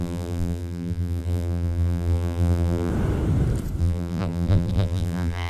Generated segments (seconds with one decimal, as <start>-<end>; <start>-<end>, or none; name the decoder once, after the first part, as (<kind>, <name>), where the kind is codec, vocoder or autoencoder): 0.0-2.9 (vocoder, BigVGAN v2); 3.8-5.5